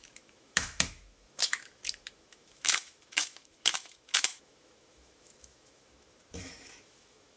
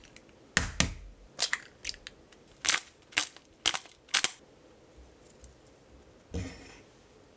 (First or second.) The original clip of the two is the second